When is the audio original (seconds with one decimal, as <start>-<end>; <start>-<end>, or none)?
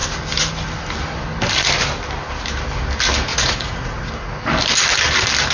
0.0-3.3; 4.1-5.5